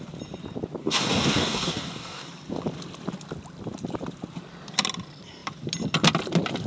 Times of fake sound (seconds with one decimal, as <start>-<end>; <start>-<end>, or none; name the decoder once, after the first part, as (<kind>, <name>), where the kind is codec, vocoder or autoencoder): 0.8-2.3 (codec, DAC)